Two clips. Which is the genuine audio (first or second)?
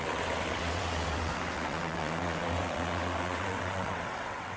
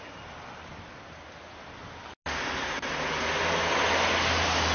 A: second